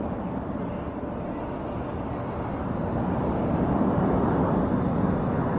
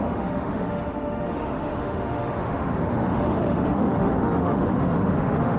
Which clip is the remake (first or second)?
second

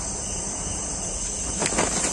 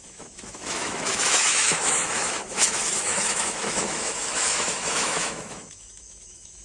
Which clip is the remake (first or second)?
second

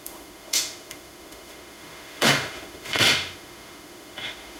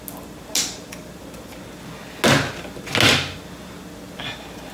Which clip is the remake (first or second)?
first